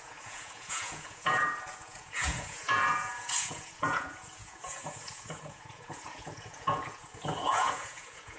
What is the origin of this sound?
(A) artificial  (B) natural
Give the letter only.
A